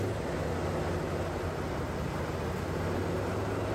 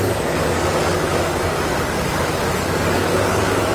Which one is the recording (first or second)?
first